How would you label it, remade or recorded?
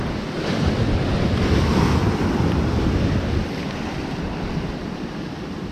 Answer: remade